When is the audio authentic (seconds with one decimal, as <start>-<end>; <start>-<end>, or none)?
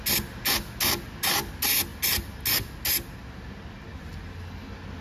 0.0-5.0